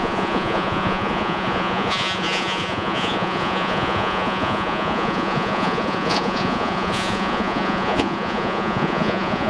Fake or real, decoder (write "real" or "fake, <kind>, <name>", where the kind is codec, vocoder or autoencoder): fake, vocoder, Vocos